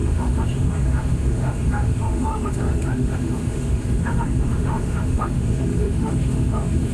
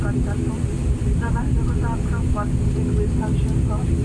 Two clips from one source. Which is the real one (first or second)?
second